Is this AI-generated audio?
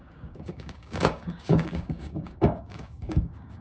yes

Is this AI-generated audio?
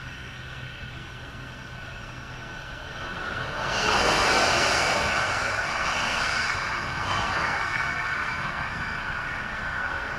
yes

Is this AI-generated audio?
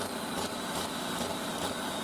yes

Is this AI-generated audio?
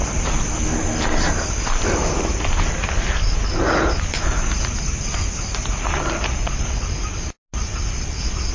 no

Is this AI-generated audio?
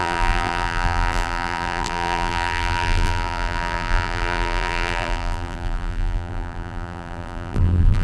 yes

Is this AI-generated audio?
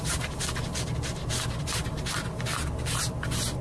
no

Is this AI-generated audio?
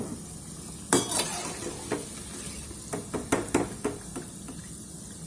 no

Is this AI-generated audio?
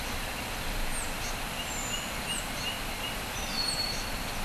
no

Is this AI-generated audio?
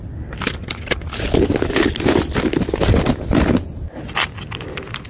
no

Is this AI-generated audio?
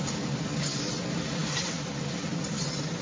no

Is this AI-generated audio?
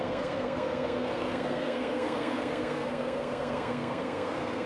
yes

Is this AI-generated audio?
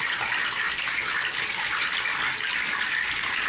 no